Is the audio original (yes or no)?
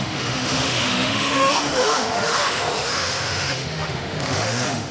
no